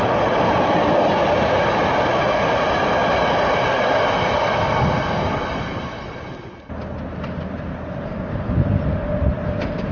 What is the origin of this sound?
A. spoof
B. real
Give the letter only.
B